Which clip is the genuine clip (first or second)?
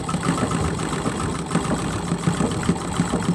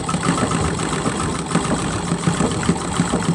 first